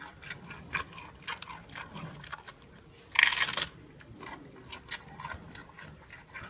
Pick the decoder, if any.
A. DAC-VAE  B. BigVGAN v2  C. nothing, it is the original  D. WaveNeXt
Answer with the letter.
C